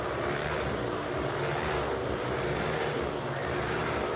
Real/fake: real